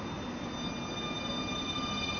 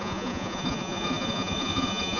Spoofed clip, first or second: second